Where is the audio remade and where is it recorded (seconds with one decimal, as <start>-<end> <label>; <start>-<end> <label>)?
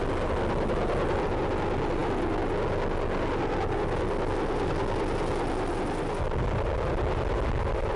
0.0-8.0 recorded